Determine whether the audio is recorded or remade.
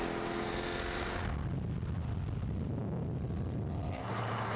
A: recorded